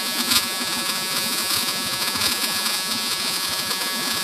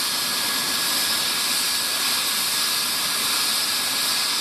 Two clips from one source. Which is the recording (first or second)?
second